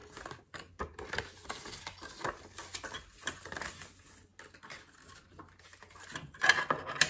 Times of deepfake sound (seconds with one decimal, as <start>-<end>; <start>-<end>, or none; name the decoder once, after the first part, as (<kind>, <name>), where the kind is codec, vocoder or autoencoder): none